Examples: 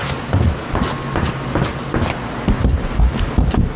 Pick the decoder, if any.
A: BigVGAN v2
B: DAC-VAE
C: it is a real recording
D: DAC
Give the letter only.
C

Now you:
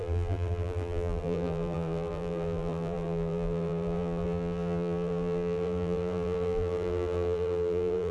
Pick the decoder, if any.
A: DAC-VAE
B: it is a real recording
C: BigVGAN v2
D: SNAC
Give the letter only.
C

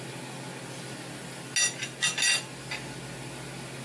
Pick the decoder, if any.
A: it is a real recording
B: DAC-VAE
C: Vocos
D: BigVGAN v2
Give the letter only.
A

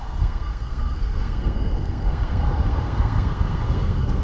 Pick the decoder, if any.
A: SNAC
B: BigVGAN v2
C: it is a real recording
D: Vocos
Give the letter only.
A